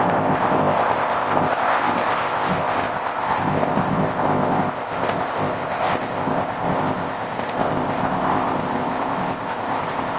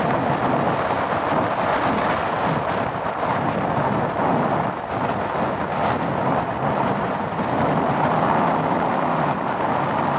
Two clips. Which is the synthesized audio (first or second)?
first